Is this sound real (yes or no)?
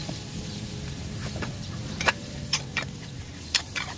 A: no